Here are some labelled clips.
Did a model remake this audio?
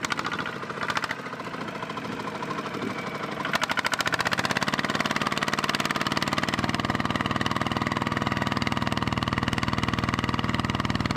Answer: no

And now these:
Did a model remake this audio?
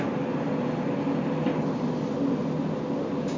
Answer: no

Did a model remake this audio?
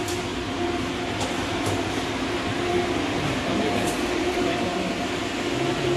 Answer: no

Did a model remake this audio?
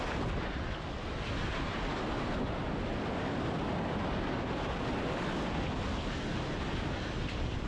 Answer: no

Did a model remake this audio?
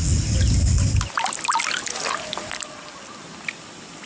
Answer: no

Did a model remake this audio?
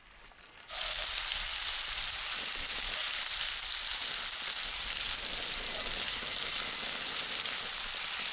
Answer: no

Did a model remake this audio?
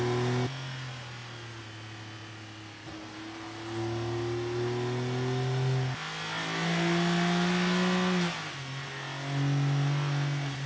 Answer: no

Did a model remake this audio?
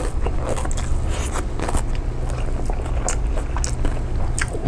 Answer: no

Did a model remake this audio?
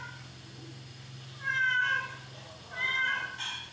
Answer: no